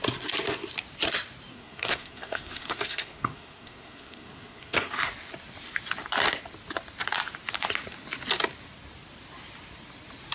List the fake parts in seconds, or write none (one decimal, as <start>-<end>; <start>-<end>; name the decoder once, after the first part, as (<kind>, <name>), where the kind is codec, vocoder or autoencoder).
1.5-4.9 (codec, SNAC)